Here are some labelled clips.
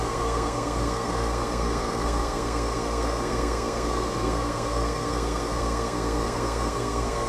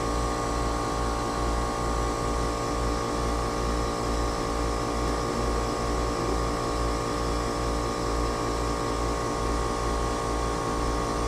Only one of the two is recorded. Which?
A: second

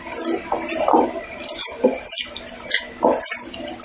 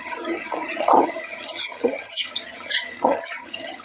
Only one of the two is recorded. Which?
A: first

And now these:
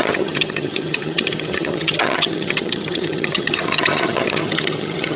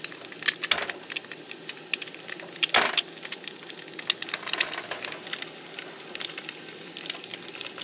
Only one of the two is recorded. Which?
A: second